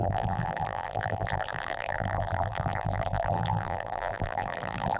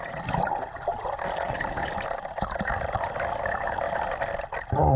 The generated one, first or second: first